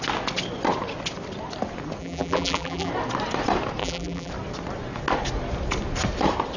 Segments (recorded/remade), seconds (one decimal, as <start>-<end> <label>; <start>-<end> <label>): 0.0-2.0 recorded; 2.0-2.9 remade; 2.9-3.8 recorded; 3.8-4.3 remade; 4.3-6.6 recorded